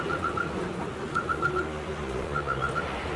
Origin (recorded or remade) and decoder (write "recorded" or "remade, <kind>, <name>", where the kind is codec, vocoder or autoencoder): remade, vocoder, Vocos